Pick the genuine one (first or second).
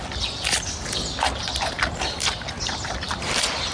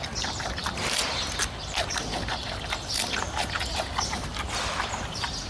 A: second